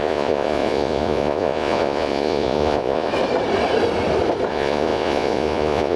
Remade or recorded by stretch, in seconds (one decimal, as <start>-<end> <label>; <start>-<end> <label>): 0.0-3.1 remade; 3.1-4.5 recorded; 4.5-6.0 remade